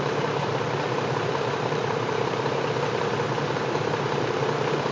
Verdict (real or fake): fake